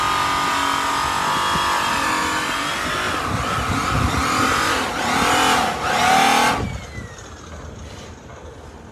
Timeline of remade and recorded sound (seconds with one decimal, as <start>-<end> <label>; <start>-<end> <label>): 0.0-2.2 recorded; 2.2-3.7 remade; 3.7-8.9 recorded